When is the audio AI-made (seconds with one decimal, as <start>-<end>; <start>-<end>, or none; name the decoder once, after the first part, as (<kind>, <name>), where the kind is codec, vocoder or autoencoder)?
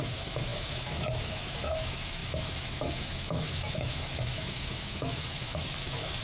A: 0.0-6.2 (autoencoder, DAC-VAE)